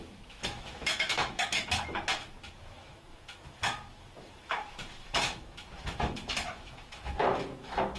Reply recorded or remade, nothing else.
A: remade